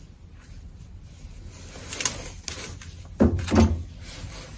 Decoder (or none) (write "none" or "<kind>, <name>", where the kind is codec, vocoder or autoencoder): none